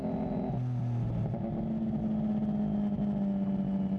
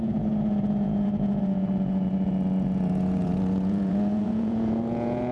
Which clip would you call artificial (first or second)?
second